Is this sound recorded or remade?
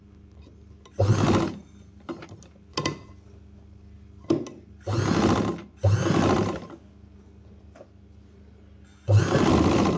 recorded